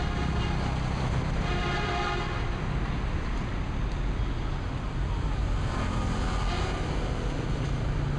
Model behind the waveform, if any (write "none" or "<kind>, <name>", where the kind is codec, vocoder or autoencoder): none